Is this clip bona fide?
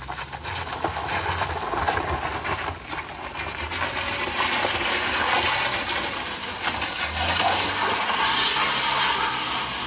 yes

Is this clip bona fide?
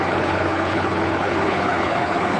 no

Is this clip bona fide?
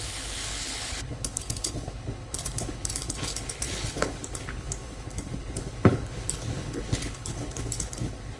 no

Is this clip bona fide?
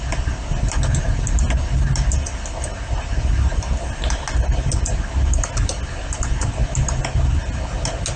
yes